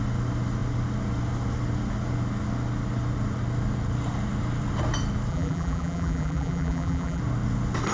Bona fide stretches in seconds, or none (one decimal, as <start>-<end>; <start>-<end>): 0.0-5.3; 7.2-7.9